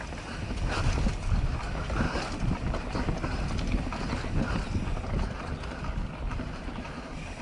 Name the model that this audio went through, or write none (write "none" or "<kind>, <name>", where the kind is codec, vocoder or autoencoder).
none